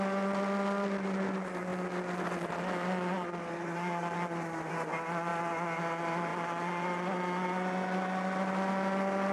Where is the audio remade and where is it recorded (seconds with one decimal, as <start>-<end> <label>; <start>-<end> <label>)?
0.0-9.3 recorded